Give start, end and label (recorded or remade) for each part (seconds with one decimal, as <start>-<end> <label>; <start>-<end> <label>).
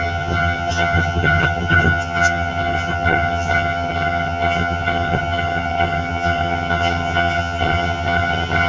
0.0-8.7 remade